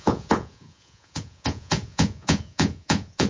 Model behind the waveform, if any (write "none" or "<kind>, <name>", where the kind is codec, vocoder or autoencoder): vocoder, Vocos